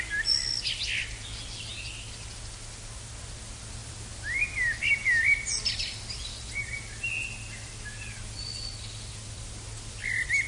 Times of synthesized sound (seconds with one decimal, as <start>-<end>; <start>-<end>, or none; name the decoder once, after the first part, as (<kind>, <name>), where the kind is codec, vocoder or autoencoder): none